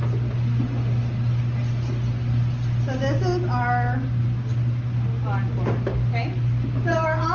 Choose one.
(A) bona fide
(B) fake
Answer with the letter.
A